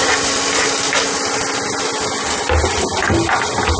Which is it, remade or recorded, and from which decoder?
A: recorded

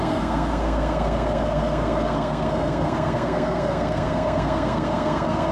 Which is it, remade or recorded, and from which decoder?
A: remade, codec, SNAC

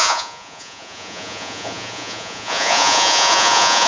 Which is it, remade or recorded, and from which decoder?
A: remade, vocoder, Vocos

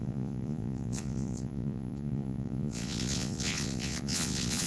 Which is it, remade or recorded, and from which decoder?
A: remade, vocoder, Vocos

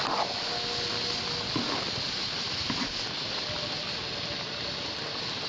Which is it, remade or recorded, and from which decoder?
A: recorded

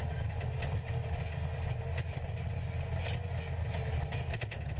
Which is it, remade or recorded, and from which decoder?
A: recorded